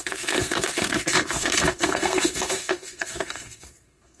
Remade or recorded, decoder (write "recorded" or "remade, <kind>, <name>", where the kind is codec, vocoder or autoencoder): remade, codec, SNAC